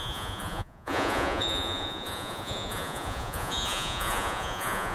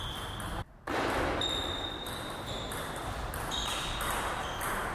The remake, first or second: first